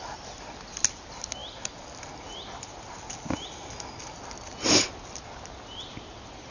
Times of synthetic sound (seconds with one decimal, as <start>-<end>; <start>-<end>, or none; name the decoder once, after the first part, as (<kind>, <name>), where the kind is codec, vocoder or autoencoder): none